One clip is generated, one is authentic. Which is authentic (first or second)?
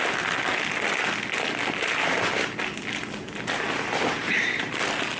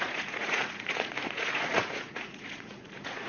first